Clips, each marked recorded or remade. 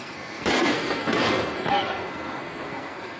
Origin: remade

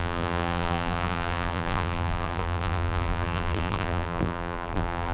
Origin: remade